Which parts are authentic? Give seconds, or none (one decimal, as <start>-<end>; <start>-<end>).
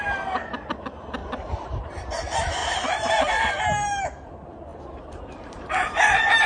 0.0-1.2; 2.0-2.6; 3.3-4.7; 6.0-6.5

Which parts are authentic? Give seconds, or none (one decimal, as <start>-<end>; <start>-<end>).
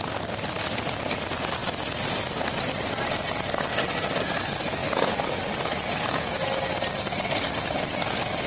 0.0-8.5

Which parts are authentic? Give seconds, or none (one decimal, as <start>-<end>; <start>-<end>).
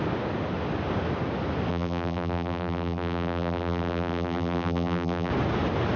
0.0-1.7; 5.3-6.0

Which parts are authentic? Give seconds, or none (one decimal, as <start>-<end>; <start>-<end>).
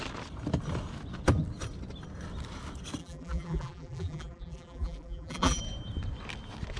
0.0-3.0; 5.6-6.8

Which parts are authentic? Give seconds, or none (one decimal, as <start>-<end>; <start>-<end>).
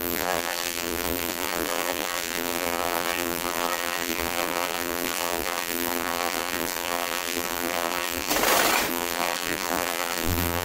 8.3-8.9